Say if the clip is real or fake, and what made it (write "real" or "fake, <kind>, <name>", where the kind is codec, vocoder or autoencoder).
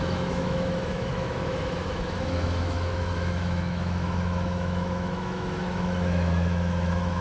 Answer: fake, autoencoder, DAC-VAE